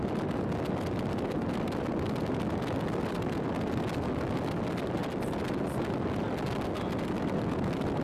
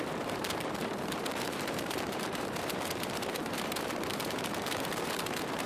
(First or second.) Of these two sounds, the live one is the first